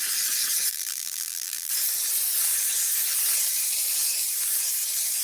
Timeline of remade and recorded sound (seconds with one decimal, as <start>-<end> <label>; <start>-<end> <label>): 0.0-0.7 recorded; 0.7-1.7 remade; 1.7-5.2 recorded